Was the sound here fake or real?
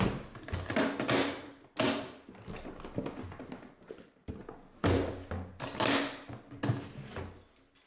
real